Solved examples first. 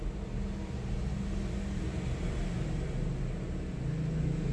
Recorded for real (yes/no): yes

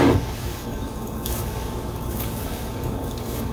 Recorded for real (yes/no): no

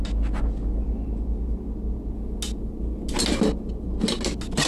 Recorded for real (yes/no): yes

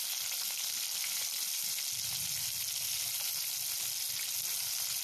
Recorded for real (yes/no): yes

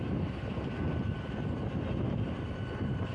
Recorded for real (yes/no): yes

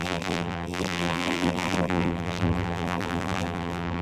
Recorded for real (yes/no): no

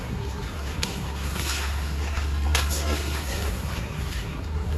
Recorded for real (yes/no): no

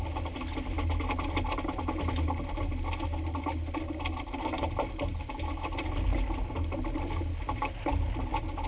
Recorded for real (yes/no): yes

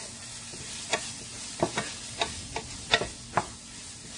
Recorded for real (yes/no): yes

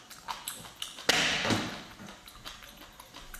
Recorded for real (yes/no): yes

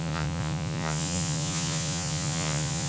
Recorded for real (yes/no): no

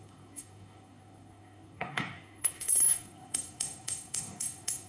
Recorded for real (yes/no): no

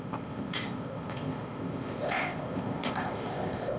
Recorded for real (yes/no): no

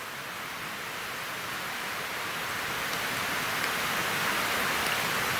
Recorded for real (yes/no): yes